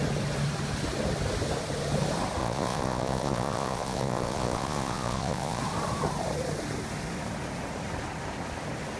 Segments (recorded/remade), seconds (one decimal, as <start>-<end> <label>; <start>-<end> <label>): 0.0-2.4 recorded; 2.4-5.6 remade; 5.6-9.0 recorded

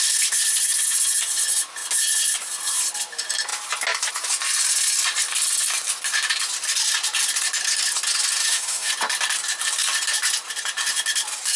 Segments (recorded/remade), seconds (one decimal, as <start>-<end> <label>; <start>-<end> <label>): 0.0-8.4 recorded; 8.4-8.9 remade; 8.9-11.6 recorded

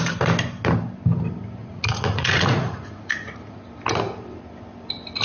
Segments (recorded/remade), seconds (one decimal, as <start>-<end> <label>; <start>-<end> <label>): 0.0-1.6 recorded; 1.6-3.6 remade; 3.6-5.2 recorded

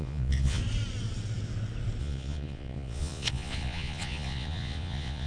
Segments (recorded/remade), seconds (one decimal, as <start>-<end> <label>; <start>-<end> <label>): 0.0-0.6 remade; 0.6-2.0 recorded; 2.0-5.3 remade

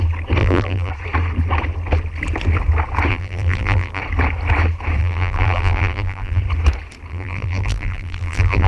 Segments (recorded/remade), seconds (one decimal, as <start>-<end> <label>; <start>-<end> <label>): 0.0-0.4 recorded; 0.4-0.9 remade; 0.9-3.1 recorded; 3.1-4.0 remade; 4.0-5.0 recorded; 5.0-6.4 remade; 6.4-7.1 recorded; 7.1-8.7 remade

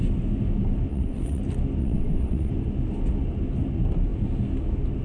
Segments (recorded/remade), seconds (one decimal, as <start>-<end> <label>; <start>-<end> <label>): 0.0-0.9 recorded; 0.9-1.4 remade; 1.4-1.8 recorded; 1.8-2.5 remade; 2.5-5.0 recorded

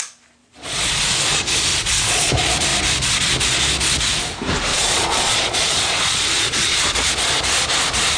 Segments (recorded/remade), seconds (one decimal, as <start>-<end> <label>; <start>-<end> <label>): 0.0-0.4 recorded; 0.4-1.0 remade; 1.0-1.7 recorded; 1.7-2.3 remade; 2.3-4.7 recorded; 4.7-6.8 remade; 6.8-8.2 recorded